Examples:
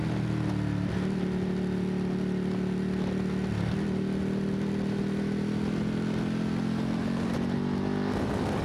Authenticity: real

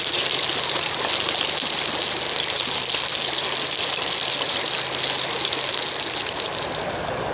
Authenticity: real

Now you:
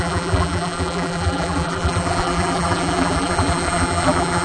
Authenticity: fake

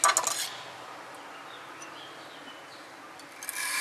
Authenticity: real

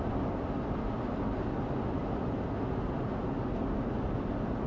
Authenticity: real